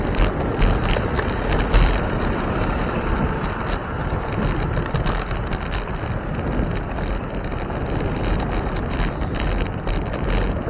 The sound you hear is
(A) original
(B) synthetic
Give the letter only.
B